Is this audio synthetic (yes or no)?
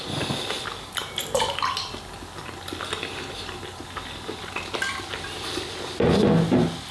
no